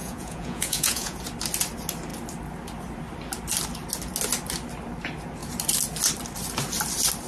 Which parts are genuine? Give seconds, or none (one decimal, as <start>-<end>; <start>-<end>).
1.2-7.3